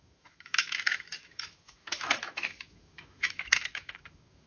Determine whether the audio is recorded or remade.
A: remade